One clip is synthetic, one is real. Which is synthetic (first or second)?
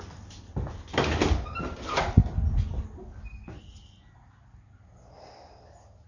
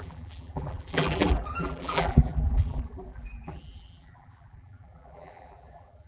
second